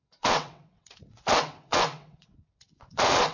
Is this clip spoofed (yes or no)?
yes